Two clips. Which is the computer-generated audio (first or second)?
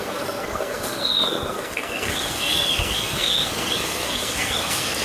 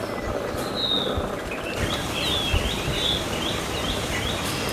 first